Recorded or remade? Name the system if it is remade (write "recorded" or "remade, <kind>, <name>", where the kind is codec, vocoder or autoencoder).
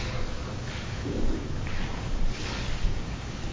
remade, codec, DAC